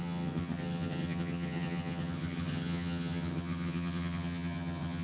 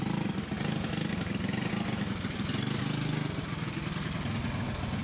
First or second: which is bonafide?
second